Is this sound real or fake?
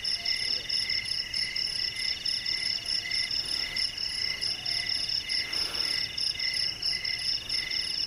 real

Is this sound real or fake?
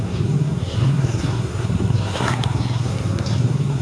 fake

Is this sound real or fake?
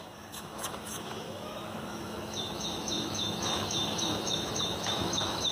fake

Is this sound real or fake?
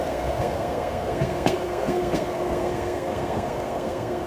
fake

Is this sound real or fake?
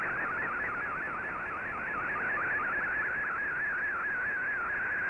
real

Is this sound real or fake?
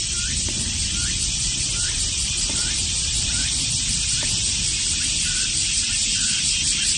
fake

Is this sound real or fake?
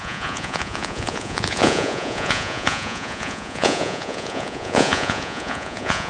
fake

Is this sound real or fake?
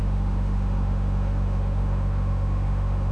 fake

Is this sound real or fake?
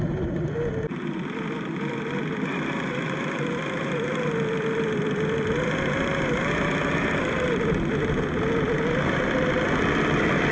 real